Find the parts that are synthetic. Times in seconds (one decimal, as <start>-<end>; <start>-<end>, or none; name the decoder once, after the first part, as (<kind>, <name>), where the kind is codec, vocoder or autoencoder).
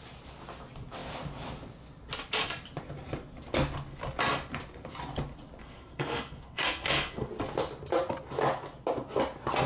5.6-7.3 (codec, SNAC)